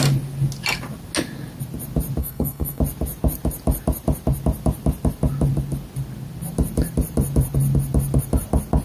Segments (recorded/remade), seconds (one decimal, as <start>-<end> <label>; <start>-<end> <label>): 0.0-2.2 recorded; 2.2-2.8 remade; 2.8-8.8 recorded